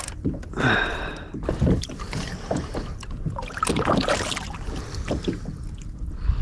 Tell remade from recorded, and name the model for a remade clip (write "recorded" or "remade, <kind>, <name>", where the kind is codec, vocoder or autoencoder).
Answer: recorded